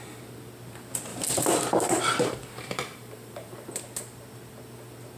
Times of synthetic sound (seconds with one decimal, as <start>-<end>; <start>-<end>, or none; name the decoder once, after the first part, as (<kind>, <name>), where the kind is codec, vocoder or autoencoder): 1.1-3.7 (vocoder, BigVGAN v2)

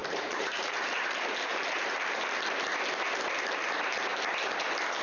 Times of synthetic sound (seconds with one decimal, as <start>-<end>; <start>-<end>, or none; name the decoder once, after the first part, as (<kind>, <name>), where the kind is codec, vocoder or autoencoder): 0.0-2.3 (vocoder, BigVGAN v2)

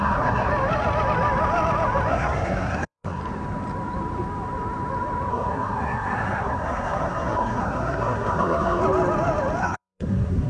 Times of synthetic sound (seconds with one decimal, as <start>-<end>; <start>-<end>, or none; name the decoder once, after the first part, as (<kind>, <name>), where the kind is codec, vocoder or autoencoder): 0.0-0.5 (codec, SNAC); 2.1-3.2; 5.3-8.8; 9.6-10.5

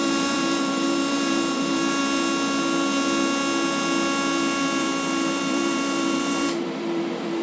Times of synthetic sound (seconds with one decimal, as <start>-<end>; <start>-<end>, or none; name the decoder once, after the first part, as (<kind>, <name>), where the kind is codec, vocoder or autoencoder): 0.0-2.0 (vocoder, BigVGAN v2); 4.8-7.4

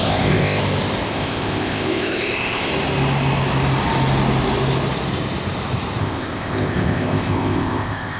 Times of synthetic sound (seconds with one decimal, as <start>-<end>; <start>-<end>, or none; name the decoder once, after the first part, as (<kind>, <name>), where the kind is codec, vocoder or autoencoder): 0.0-0.6 (codec, ZipCodec); 1.1-2.7; 6.0-8.2

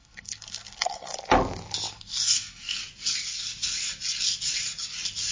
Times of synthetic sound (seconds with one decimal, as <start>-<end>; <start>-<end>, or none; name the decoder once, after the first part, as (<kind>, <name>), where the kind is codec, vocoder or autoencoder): 0.0-1.1 (codec, SNAC); 1.9-2.8

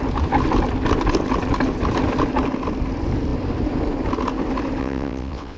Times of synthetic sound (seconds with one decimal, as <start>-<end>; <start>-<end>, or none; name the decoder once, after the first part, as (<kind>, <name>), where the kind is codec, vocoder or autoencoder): 4.8-5.6 (vocoder, WaveNeXt)